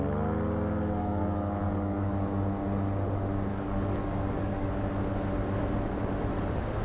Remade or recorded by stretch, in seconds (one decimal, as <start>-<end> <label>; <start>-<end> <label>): 0.0-1.0 recorded; 1.0-2.1 remade; 2.1-3.5 recorded; 3.5-4.7 remade; 4.7-6.8 recorded